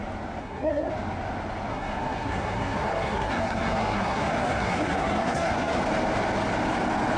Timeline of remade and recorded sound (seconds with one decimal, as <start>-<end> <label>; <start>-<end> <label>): 0.0-0.4 recorded; 0.4-0.9 remade; 0.9-1.7 recorded; 1.7-5.8 remade; 5.8-7.2 recorded